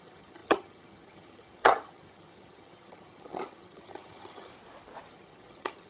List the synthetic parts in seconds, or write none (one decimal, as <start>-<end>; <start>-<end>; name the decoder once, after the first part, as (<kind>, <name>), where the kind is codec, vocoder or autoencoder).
0.0-4.5 (vocoder, HiFi-GAN); 5.1-5.9